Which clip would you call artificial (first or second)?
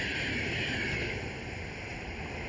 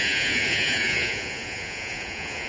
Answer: second